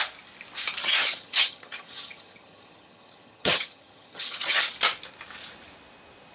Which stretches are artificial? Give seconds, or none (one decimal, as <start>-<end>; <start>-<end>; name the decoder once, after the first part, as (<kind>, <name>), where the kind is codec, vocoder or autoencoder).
0.8-4.6 (vocoder, HiFi-GAN)